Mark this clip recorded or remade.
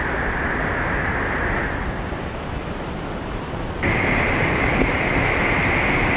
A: recorded